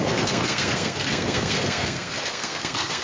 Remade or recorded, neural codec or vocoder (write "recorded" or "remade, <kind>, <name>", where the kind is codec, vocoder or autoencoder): remade, codec, SNAC